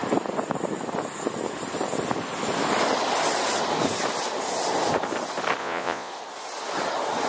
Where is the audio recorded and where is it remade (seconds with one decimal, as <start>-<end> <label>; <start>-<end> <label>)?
0.0-5.6 recorded; 5.6-6.1 remade; 6.1-7.3 recorded